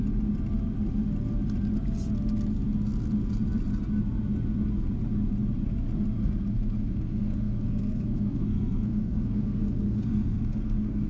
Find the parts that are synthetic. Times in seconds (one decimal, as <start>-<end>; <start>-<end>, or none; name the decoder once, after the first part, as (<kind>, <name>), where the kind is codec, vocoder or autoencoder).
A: 6.2-11.1 (codec, SNAC)